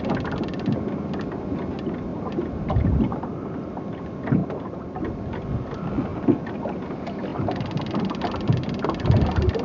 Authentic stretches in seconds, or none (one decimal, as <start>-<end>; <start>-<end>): 0.0-2.1; 3.2-4.4; 5.0-6.1; 6.7-9.6